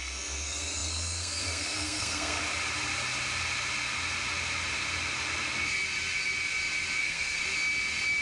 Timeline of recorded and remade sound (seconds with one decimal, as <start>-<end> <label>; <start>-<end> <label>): 0.0-2.4 remade; 2.4-7.0 recorded; 7.0-7.4 remade; 7.4-8.2 recorded